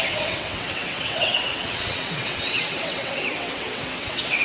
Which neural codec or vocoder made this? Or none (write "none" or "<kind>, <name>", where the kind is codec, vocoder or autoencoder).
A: vocoder, WaveNeXt